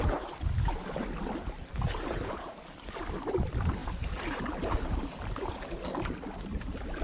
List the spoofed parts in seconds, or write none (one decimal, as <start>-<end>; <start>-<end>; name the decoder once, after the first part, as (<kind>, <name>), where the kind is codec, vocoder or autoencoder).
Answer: 3.8-5.5 (vocoder, BigVGAN v2)